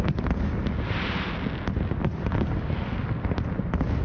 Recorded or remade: recorded